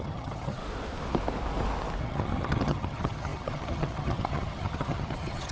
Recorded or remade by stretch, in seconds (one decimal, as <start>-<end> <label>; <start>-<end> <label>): 0.0-0.6 remade; 0.6-2.0 recorded; 2.0-5.5 remade